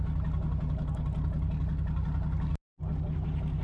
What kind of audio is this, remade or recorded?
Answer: recorded